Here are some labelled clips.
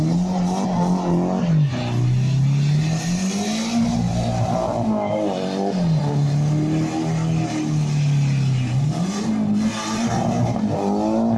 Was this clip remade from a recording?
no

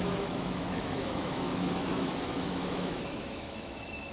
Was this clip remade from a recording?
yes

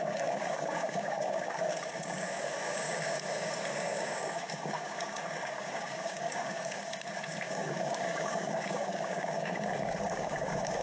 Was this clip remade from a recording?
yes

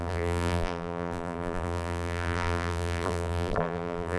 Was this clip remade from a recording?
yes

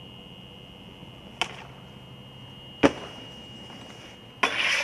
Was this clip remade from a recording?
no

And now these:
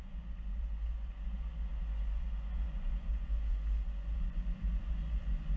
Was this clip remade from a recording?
yes